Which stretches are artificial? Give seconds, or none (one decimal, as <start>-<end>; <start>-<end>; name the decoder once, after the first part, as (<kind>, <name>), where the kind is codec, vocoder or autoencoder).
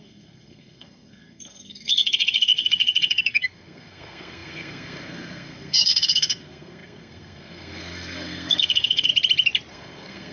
0.0-9.1 (codec, SNAC); 9.7-10.3